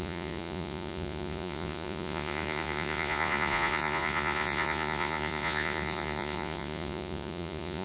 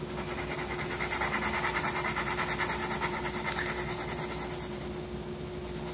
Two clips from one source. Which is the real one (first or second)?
second